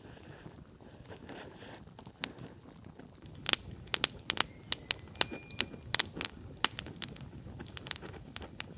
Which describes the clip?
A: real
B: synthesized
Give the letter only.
A